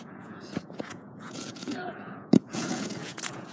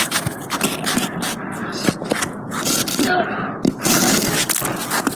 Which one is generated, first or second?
first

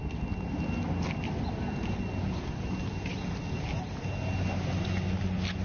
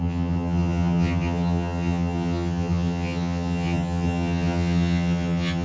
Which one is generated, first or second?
second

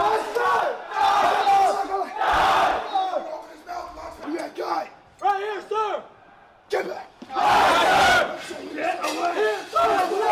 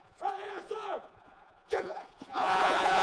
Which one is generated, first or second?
second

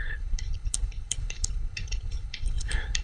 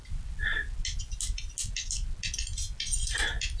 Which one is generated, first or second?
first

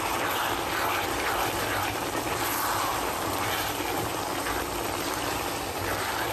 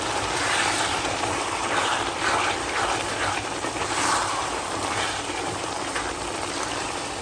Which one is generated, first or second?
second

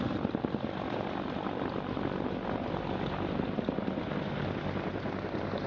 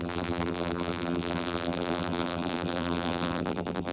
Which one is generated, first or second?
second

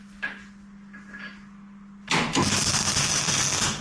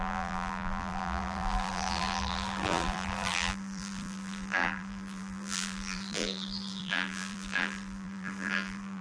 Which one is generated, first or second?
second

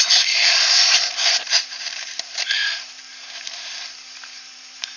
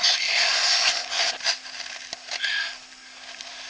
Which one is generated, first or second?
first